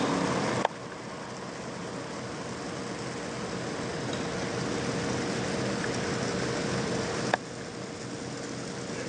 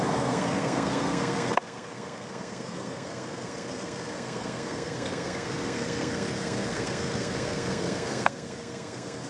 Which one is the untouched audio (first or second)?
first